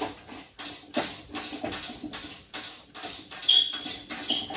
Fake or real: real